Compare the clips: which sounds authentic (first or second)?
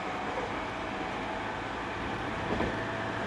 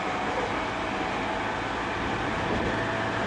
second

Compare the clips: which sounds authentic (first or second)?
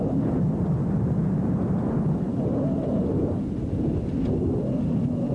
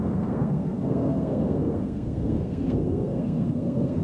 first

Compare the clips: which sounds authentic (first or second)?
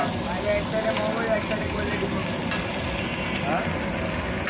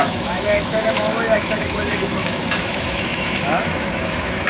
first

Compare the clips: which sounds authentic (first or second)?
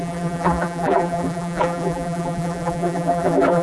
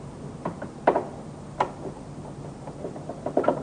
second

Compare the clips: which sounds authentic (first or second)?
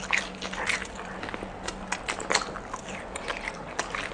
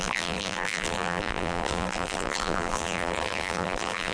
first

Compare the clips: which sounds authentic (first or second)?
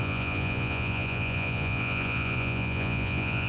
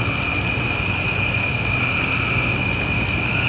second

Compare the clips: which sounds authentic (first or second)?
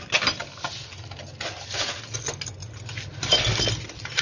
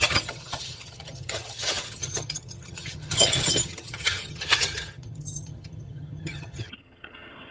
first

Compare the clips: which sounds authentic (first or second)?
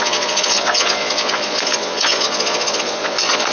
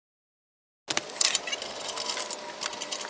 second